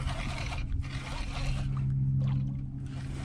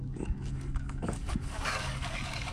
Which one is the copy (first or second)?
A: second